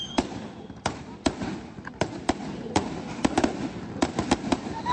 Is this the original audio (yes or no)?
yes